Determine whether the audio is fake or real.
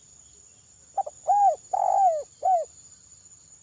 real